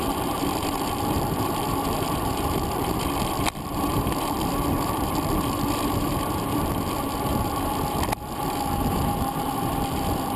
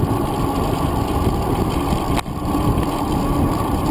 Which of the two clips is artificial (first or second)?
first